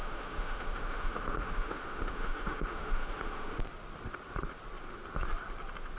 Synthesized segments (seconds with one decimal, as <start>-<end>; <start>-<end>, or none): 0.0-3.6